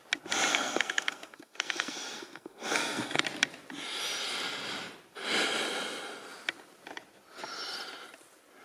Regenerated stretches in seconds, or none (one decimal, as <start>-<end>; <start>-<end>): 0.5-3.2